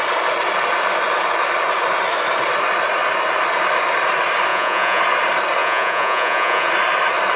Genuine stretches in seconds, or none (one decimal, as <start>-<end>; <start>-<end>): 0.0-4.5; 5.0-5.6; 6.7-7.4